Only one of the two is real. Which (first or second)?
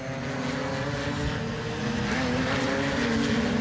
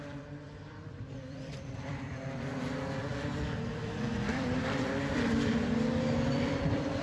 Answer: first